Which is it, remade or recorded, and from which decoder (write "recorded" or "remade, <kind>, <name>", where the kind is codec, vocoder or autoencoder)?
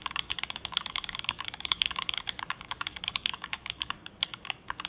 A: remade, codec, DAC